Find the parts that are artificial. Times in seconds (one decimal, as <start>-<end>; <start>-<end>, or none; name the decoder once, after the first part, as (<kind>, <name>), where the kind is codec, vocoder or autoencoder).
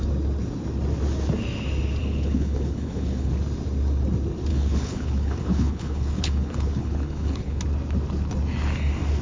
2.0-3.3 (codec, HILCodec); 4.5-7.6